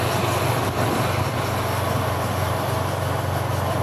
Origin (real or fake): real